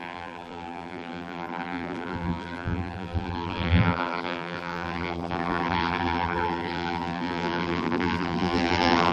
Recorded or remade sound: remade